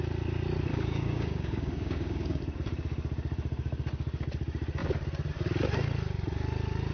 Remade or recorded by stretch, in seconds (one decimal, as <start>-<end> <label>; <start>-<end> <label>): 0.0-0.7 recorded; 0.7-2.4 remade; 2.4-6.9 recorded